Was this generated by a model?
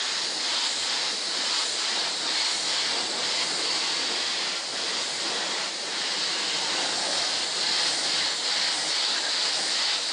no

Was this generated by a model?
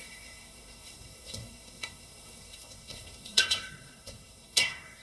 yes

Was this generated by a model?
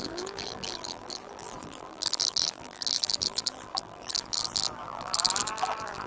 yes